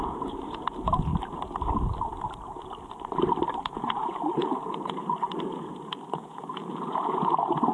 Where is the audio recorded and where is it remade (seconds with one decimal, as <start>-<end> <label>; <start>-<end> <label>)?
0.0-1.1 remade; 1.1-3.6 recorded; 3.6-7.7 remade